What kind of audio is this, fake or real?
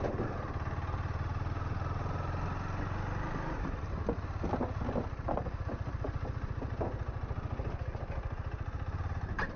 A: real